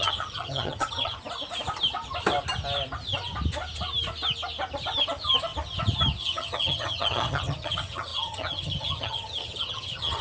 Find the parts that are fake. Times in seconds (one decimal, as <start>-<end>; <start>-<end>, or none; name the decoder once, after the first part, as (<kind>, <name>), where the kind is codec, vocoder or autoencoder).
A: 0.0-1.2 (vocoder, HiFi-GAN); 6.2-10.2